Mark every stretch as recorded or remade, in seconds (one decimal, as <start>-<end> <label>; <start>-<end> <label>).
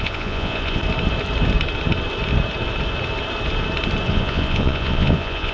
0.0-0.8 remade; 0.8-4.1 recorded; 4.1-5.5 remade